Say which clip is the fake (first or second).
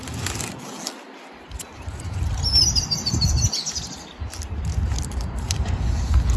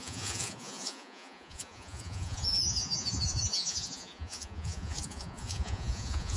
second